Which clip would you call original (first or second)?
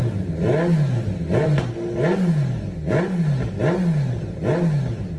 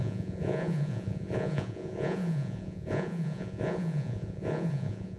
first